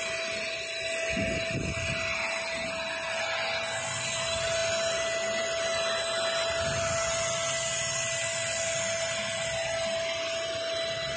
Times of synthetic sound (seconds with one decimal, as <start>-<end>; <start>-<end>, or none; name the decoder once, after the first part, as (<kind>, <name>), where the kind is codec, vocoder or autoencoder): none